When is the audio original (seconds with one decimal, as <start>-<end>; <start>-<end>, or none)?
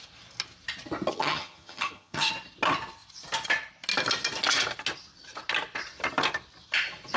0.0-1.1; 2.3-7.2